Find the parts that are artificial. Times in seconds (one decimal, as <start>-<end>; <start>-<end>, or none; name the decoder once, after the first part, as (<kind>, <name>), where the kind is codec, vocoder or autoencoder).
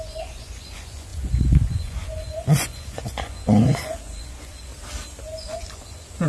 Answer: 0.0-4.7 (vocoder, Vocos); 5.2-6.3